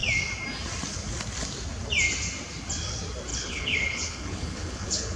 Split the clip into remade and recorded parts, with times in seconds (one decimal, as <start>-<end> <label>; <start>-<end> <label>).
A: 0.0-3.3 recorded; 3.3-5.2 remade